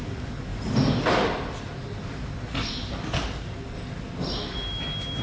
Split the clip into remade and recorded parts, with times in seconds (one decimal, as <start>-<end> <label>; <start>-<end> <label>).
0.0-5.2 recorded